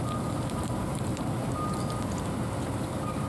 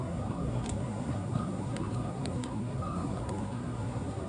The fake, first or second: second